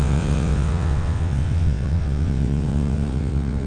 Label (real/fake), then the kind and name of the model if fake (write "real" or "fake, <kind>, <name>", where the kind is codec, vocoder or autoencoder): fake, vocoder, WaveNeXt